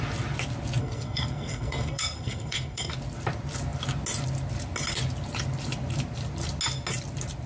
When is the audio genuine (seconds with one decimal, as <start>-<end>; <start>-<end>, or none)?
0.0-0.8; 2.9-7.5